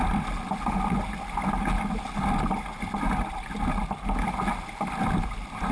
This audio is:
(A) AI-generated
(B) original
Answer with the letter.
B